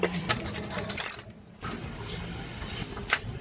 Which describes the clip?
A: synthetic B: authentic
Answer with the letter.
B